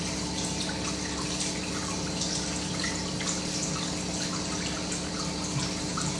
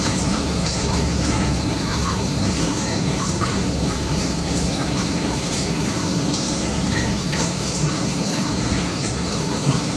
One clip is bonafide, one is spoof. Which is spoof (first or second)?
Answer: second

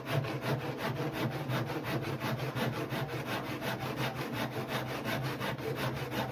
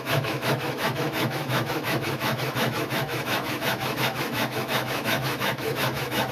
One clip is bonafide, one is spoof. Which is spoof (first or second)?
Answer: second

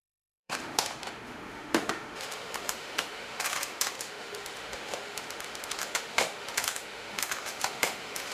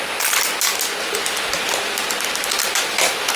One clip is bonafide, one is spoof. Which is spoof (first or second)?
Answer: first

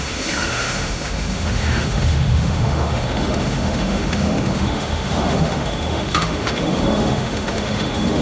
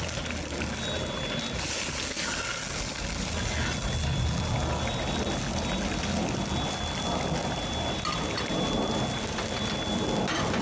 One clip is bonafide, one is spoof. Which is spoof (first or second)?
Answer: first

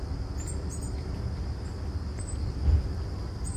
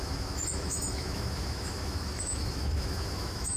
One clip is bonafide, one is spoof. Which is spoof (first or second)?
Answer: second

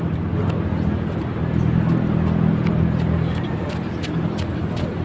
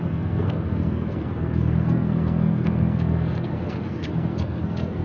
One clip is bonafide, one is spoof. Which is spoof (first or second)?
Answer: second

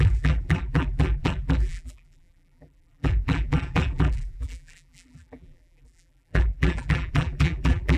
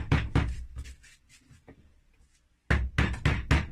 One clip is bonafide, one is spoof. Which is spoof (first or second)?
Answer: first